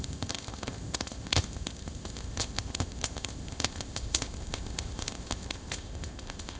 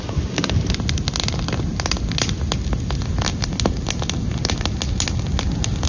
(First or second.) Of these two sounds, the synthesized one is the first